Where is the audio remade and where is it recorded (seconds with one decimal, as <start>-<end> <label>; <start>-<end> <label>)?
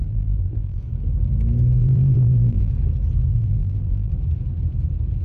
0.0-0.8 remade; 0.8-1.8 recorded; 1.8-2.7 remade; 2.7-3.3 recorded; 3.3-4.1 remade; 4.1-5.2 recorded